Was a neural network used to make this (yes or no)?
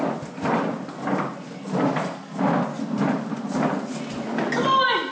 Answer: no